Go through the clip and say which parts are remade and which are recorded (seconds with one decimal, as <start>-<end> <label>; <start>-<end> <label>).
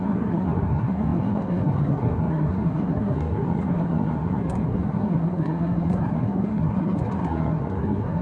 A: 0.0-8.2 remade